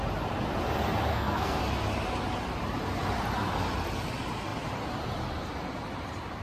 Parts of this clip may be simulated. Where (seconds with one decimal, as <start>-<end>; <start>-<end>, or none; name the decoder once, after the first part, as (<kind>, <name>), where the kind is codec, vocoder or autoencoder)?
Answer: 1.1-1.6 (codec, SNAC)